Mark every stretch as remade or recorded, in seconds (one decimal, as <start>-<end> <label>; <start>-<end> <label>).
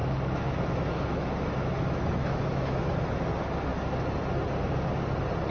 0.0-3.3 remade; 3.3-5.5 recorded